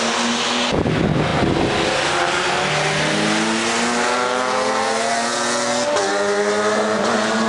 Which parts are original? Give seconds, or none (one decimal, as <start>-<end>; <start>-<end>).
0.0-7.5